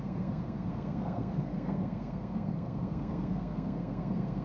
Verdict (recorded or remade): remade